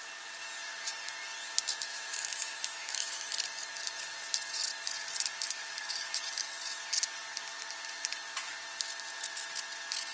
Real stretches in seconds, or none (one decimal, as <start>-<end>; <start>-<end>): 0.0-1.9; 3.3-10.1